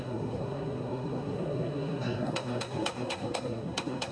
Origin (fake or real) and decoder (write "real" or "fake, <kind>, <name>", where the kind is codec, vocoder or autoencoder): fake, codec, SNAC